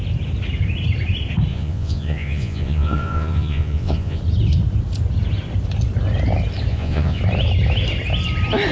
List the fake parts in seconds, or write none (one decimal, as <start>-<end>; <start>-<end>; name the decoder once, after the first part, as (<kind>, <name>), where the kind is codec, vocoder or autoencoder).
1.5-4.2 (vocoder, Vocos); 6.7-7.2